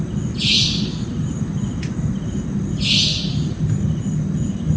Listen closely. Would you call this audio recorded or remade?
recorded